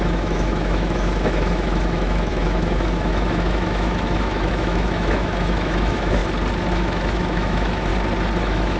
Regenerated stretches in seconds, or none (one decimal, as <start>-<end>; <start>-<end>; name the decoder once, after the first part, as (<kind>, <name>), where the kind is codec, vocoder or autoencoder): 0.0-6.2 (autoencoder, DAC-VAE); 6.7-7.9; 8.4-8.8